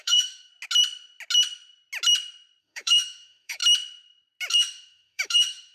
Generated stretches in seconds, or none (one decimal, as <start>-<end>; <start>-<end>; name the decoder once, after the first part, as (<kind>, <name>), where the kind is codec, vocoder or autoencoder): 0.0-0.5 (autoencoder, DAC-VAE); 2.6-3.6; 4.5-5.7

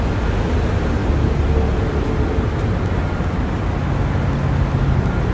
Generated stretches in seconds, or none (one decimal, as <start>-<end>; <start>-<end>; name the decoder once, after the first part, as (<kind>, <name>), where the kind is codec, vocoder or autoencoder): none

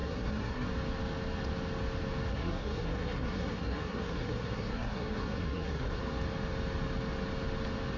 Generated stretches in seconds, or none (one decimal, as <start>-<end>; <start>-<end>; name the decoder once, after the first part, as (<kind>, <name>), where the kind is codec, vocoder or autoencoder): 0.0-0.7 (codec, SNAC); 2.3-6.0